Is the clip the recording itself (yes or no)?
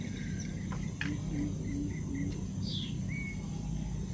yes